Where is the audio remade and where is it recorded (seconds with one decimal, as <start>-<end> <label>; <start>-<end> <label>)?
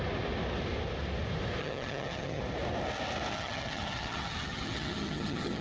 0.0-1.6 recorded; 1.6-2.4 remade; 2.4-3.3 recorded; 3.3-5.6 remade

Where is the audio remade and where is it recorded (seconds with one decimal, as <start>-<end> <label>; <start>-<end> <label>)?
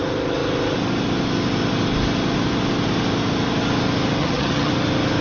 0.0-4.2 recorded; 4.2-4.7 remade; 4.7-5.2 recorded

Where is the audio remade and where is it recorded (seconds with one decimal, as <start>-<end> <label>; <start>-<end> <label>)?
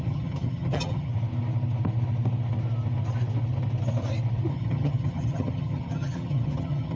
0.0-1.1 remade; 1.1-4.5 recorded; 4.5-7.0 remade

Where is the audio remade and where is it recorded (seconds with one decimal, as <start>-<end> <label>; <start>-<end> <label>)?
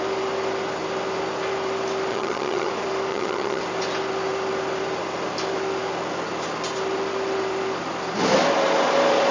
0.0-2.1 recorded; 2.1-2.7 remade; 2.7-3.1 recorded; 3.1-3.6 remade; 3.6-9.3 recorded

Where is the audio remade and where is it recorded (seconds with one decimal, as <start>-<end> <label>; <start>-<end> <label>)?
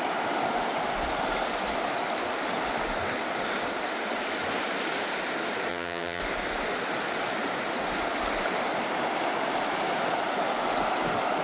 0.0-5.7 recorded; 5.7-6.2 remade; 6.2-11.4 recorded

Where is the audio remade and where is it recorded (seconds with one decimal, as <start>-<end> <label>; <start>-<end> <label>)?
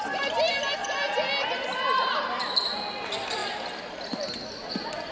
0.0-5.1 recorded